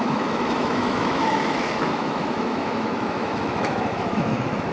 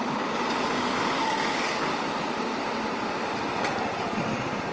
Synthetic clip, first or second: first